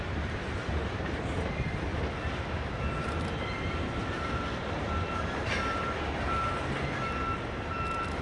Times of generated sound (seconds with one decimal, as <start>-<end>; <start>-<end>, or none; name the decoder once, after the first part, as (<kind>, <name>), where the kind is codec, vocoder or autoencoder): 1.9-6.0 (vocoder, BigVGAN v2)